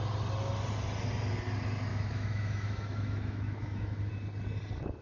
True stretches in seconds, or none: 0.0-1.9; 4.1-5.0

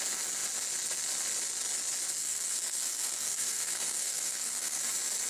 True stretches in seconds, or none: 0.0-2.2; 4.8-5.3